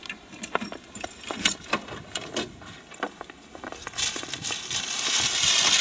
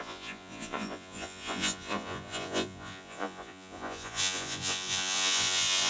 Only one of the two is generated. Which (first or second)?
second